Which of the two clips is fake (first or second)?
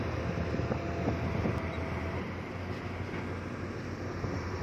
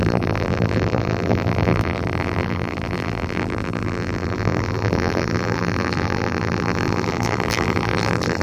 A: second